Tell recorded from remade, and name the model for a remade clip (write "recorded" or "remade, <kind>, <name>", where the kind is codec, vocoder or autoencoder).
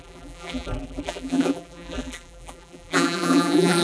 remade, vocoder, BigVGAN v2